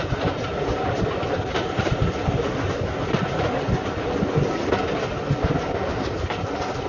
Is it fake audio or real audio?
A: real